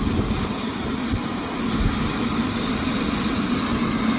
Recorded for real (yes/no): yes